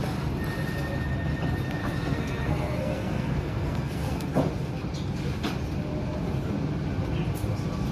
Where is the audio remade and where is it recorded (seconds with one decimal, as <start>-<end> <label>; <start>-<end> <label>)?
0.0-1.8 recorded; 1.8-4.3 remade; 4.3-7.9 recorded